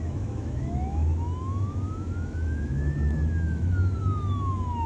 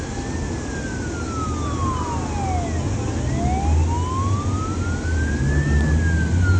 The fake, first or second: first